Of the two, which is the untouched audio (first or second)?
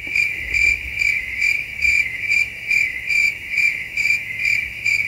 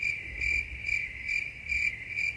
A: second